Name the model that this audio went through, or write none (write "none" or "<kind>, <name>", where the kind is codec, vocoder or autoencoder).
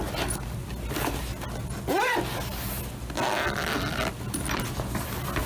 none